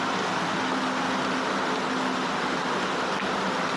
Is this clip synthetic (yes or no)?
no